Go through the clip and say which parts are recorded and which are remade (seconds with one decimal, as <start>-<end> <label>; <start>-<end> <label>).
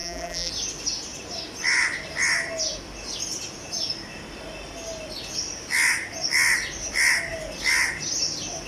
0.0-0.5 remade; 0.5-8.7 recorded